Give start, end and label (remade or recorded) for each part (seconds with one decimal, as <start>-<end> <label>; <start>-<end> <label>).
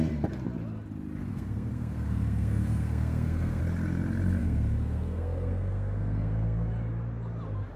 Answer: 0.0-1.3 recorded; 1.3-3.6 remade; 3.6-4.4 recorded; 4.4-6.7 remade; 6.7-7.8 recorded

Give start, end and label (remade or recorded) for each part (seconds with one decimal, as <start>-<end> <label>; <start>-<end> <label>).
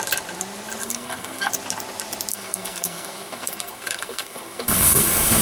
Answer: 0.0-0.8 recorded; 0.8-1.5 remade; 1.5-2.3 recorded; 2.3-5.4 remade